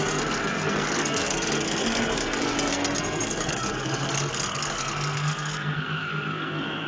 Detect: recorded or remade remade